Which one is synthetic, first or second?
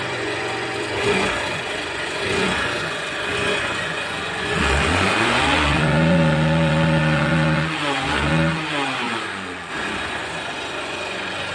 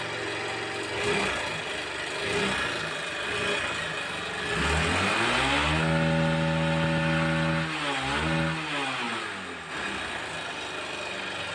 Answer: first